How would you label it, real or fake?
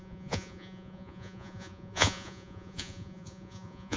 fake